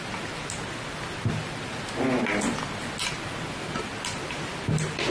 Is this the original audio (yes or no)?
yes